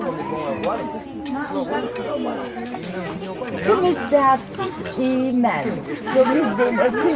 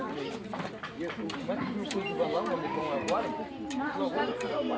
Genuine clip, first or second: first